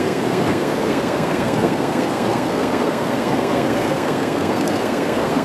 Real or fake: fake